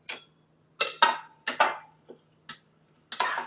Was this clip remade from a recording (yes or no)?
no